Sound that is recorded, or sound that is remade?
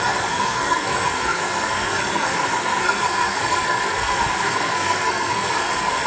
remade